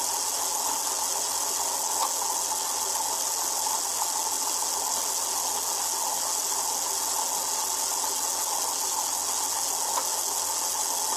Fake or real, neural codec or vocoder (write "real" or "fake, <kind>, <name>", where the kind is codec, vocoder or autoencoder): real